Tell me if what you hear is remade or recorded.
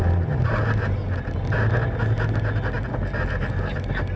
recorded